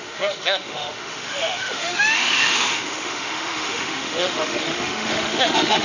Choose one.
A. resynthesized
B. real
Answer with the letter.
A